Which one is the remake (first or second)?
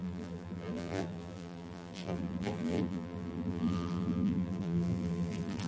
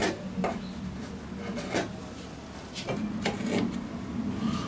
first